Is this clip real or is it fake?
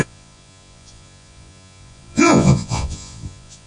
fake